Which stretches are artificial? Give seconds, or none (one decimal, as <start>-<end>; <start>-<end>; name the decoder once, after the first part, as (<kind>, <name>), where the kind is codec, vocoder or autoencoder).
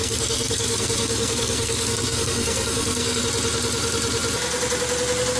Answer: 0.0-3.2 (codec, SNAC)